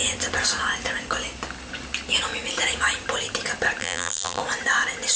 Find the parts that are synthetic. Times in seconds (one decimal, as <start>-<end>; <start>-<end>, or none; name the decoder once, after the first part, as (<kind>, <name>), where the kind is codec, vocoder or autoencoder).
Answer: 3.8-4.4 (vocoder, BigVGAN v2)